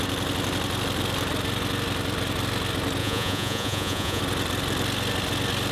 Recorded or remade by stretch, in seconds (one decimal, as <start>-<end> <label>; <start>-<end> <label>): 0.0-3.0 recorded; 3.0-4.2 remade; 4.2-5.7 recorded